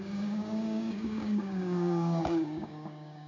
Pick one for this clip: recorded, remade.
remade